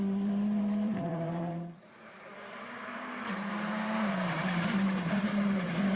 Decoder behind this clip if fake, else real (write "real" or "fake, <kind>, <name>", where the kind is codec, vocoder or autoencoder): fake, vocoder, BigVGAN v2